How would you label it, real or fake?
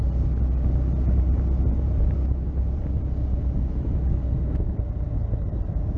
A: real